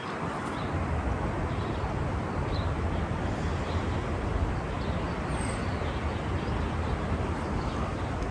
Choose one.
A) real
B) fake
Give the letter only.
A